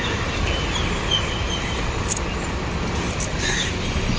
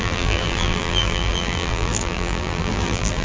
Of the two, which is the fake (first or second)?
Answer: second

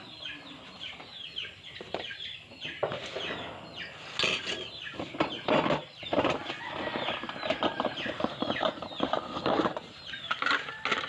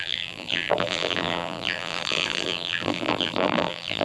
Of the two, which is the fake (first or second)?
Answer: second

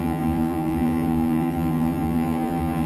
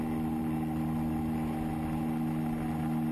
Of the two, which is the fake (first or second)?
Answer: first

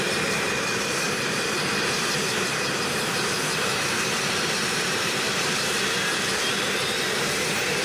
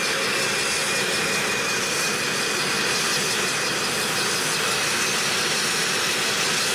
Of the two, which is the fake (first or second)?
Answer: first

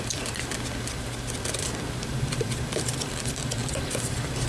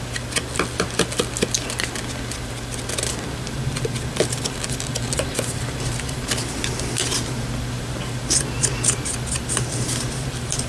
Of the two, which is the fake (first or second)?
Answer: first